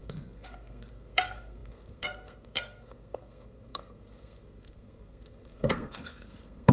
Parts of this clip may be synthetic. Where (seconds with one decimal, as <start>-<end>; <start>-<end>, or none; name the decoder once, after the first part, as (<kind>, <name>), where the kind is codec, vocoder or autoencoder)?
0.0-6.7 (codec, SNAC)